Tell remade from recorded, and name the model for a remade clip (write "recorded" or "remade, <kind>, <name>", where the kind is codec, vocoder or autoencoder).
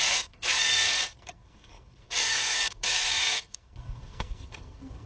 remade, codec, SNAC